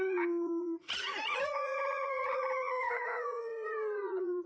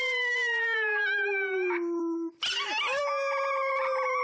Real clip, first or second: second